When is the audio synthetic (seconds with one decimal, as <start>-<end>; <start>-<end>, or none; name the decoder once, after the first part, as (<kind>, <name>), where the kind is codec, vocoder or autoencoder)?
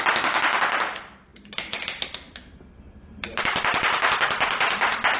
none